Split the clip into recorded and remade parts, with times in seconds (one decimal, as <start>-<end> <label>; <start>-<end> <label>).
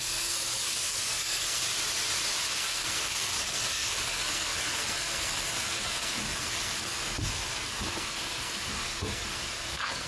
0.0-1.6 remade; 1.6-2.5 recorded; 2.5-10.1 remade